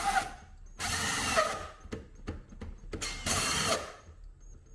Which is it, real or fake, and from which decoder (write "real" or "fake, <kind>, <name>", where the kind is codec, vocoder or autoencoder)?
real